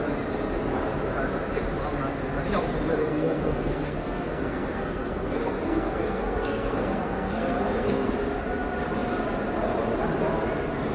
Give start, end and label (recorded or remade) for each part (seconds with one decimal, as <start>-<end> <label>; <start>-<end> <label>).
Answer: 0.0-3.0 recorded; 3.0-8.1 remade; 8.1-10.9 recorded